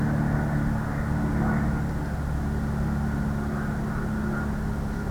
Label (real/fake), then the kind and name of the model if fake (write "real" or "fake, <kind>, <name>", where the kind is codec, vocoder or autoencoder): real